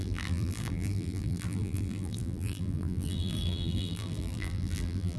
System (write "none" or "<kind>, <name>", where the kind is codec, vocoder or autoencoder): vocoder, BigVGAN v2